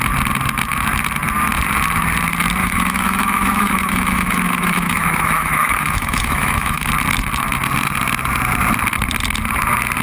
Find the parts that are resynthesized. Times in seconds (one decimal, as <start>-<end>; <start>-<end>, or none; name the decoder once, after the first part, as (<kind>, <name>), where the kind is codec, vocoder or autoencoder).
2.6-6.9 (autoencoder, DAC-VAE)